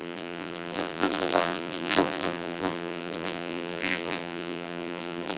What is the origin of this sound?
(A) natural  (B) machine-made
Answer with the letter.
B